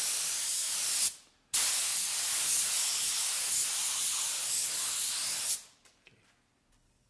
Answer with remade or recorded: recorded